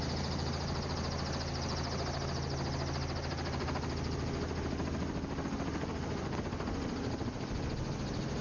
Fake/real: real